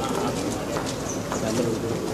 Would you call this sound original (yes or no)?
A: yes